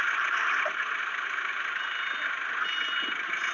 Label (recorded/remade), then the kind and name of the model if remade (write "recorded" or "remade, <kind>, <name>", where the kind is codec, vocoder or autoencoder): recorded